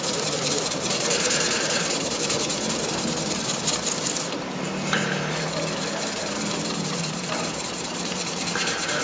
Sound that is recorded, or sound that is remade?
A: remade